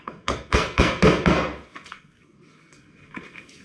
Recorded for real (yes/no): no